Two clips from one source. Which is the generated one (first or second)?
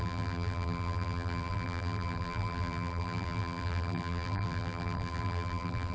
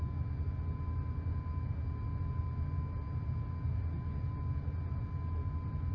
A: first